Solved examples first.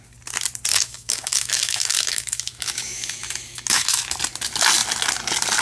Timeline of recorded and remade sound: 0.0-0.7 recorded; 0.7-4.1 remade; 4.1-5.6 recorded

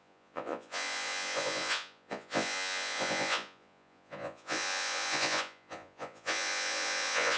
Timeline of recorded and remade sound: 0.0-7.4 remade

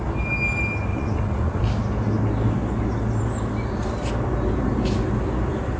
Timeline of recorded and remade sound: 0.0-0.9 recorded; 0.9-1.6 remade; 1.6-5.8 recorded